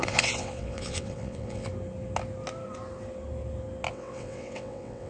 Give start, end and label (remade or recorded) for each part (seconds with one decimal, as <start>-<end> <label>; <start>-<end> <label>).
0.0-1.7 remade; 1.7-3.9 recorded; 3.9-5.1 remade